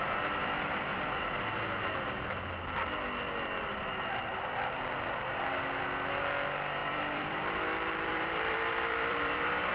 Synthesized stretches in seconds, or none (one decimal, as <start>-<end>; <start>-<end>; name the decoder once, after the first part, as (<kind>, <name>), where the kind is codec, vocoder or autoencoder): 6.8-7.6 (vocoder, BigVGAN v2); 8.1-9.7